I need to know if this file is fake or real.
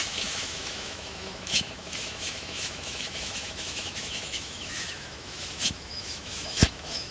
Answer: fake